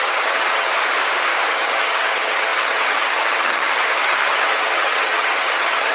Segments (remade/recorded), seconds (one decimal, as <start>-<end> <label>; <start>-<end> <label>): 0.0-0.7 remade; 0.7-1.5 recorded; 1.5-5.9 remade